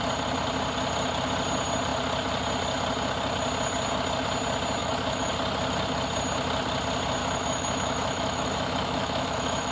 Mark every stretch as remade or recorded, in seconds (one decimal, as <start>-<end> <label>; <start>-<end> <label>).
0.0-4.8 recorded; 4.8-5.3 remade; 5.3-7.2 recorded; 7.2-9.7 remade